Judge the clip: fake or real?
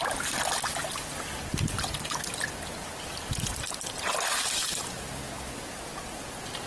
real